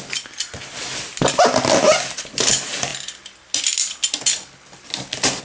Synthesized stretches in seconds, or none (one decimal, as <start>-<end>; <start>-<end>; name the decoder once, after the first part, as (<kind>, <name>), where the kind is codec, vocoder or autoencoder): none